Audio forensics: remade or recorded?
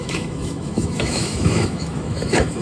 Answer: remade